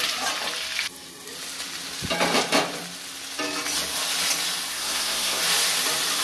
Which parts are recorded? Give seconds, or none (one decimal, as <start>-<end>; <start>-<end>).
0.0-4.7; 5.4-6.2